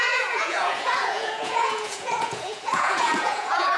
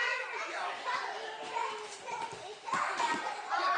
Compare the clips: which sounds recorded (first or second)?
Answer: second